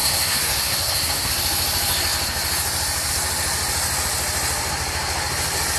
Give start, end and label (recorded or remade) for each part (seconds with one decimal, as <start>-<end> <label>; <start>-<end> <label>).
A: 0.0-1.3 remade; 1.3-5.8 recorded

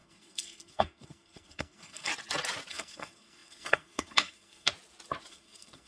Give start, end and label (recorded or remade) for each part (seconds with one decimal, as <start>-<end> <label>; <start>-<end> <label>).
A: 0.0-2.1 remade; 2.1-2.7 recorded; 2.7-4.7 remade; 4.7-5.3 recorded; 5.3-5.9 remade

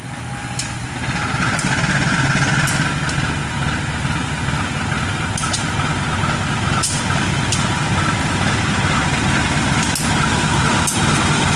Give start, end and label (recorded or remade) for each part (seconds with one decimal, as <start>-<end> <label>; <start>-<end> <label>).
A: 0.0-11.6 recorded

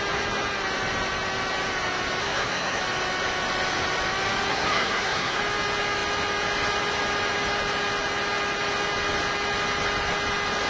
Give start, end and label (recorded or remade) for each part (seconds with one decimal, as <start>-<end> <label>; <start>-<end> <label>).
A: 0.0-2.2 recorded; 2.2-2.8 remade; 2.8-4.5 recorded; 4.5-5.4 remade; 5.4-10.7 recorded

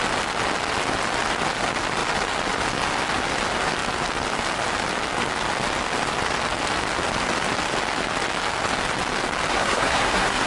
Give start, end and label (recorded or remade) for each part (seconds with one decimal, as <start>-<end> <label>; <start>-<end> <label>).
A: 0.0-9.5 recorded; 9.5-10.5 remade

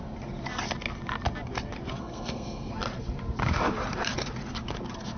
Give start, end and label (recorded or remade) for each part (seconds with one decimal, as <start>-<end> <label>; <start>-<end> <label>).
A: 0.0-2.0 recorded; 2.0-2.7 remade; 2.7-5.2 recorded

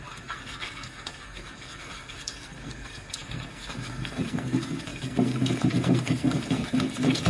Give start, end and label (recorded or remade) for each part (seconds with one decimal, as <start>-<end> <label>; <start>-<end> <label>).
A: 0.0-7.3 remade